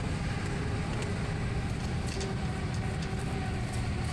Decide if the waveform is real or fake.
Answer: real